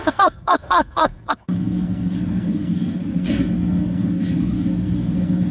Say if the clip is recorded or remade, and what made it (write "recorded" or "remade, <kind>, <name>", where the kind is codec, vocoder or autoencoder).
remade, codec, SNAC